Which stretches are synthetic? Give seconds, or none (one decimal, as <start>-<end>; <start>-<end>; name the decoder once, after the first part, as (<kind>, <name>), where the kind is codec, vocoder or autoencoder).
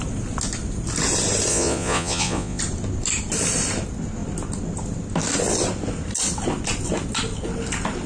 1.5-2.6 (vocoder, Vocos)